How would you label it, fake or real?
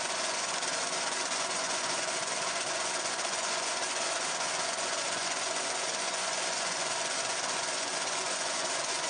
fake